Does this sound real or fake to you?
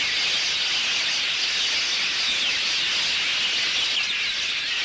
real